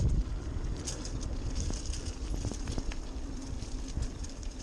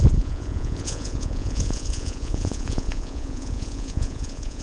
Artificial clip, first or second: second